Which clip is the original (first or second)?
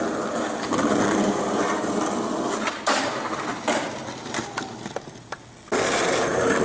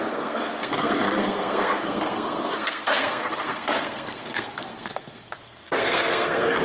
first